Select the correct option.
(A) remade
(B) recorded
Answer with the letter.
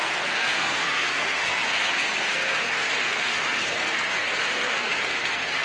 A